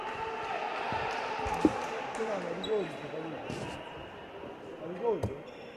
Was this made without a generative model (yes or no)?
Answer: yes